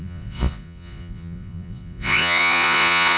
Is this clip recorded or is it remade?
remade